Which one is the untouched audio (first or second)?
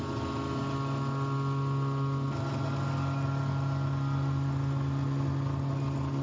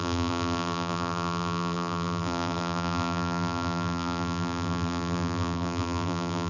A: first